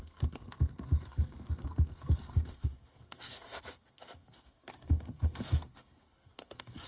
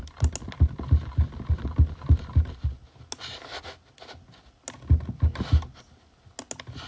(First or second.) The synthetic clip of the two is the first